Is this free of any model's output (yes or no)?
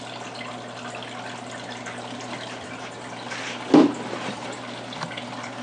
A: yes